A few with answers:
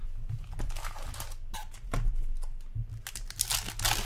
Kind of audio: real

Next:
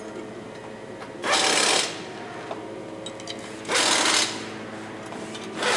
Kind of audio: real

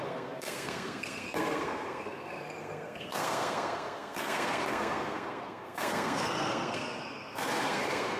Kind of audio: fake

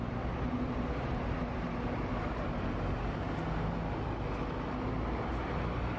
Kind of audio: real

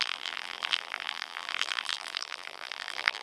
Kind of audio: fake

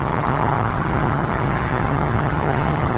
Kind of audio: fake